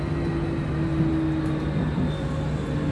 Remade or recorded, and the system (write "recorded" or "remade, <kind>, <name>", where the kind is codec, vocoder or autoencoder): recorded